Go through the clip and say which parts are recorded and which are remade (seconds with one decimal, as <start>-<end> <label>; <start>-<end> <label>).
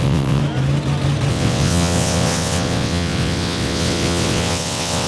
0.0-0.4 remade; 0.4-1.3 recorded; 1.3-5.1 remade